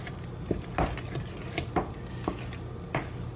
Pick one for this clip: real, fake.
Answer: real